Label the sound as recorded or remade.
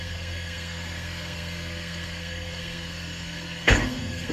remade